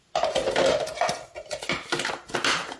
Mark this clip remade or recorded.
recorded